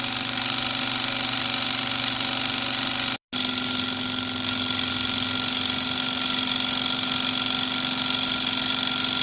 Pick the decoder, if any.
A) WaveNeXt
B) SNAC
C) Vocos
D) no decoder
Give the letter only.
D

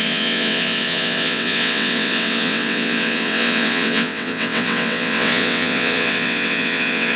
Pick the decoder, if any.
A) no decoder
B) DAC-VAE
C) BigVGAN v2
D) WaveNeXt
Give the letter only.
D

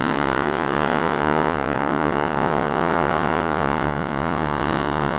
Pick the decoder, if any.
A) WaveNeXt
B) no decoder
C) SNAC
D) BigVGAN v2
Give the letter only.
A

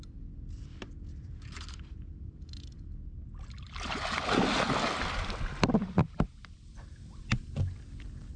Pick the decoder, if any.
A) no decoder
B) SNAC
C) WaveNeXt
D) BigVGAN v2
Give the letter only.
A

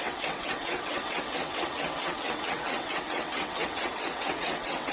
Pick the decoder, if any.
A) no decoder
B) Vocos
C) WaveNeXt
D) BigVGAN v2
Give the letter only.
C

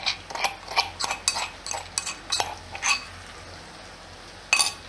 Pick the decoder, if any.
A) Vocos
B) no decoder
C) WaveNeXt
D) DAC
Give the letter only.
B